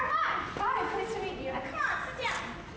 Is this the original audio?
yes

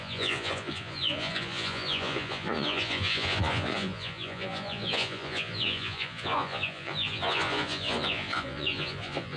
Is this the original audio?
no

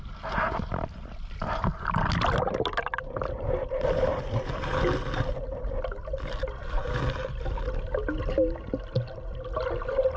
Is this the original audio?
yes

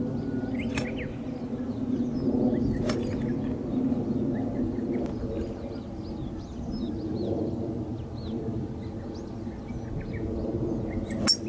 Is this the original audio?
yes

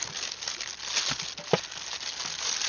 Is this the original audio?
yes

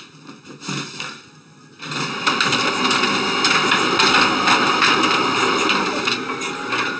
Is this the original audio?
yes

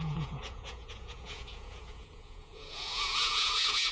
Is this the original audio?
no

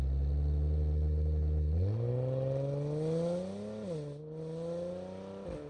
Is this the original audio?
yes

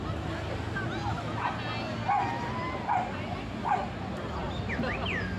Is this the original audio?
yes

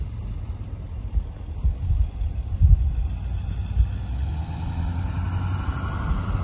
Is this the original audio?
yes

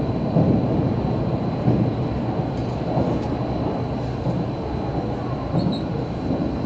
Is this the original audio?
yes